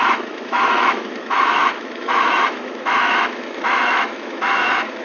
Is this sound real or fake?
fake